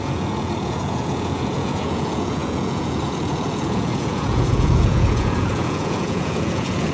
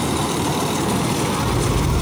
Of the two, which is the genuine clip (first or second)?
second